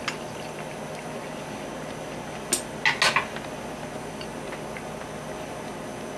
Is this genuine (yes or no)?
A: yes